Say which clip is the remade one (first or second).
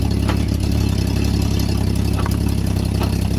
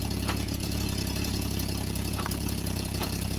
second